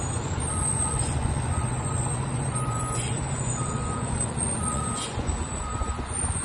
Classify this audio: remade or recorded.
remade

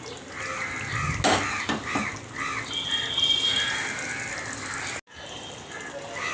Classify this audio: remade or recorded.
recorded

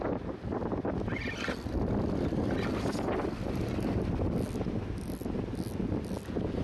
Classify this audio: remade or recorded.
recorded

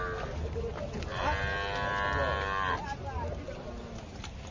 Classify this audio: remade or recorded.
recorded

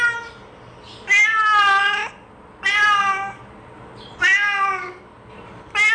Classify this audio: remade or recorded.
recorded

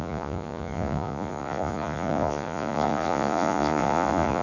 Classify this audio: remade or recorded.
remade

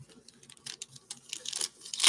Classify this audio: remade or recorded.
recorded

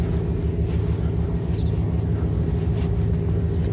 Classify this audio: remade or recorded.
recorded